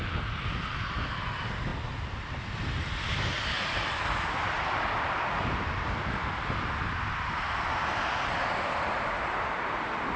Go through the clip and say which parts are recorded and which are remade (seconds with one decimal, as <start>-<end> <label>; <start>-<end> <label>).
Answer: 0.0-10.2 recorded